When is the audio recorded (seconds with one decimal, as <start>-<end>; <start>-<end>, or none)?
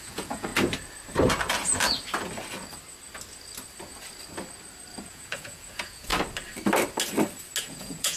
0.5-5.0; 6.1-7.6